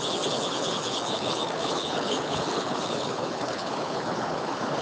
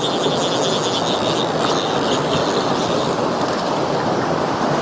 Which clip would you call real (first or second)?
second